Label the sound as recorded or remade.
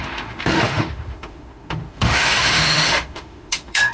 remade